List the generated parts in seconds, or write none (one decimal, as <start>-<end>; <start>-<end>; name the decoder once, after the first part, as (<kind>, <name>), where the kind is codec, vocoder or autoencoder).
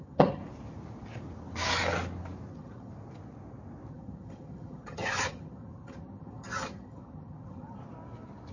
0.0-0.4 (vocoder, HiFi-GAN); 2.5-2.9; 3.9-7.8